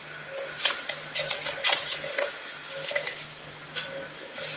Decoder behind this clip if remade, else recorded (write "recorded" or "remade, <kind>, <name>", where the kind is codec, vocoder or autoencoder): recorded